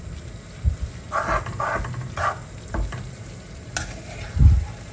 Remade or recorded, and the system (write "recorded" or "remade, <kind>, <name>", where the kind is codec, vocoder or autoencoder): recorded